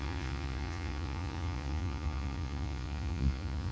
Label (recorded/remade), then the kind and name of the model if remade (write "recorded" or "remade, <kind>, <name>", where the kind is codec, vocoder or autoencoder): remade, vocoder, Vocos